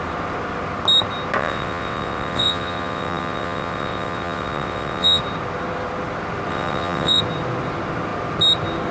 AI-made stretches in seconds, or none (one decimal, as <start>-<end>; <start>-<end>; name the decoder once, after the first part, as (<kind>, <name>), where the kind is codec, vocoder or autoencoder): 1.4-5.2 (vocoder, WaveNeXt); 6.5-7.2